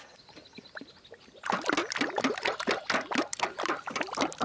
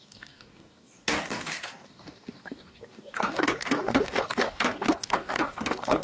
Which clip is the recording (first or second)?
first